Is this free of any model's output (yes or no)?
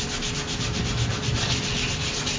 yes